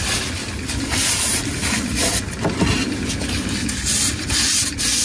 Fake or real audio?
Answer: real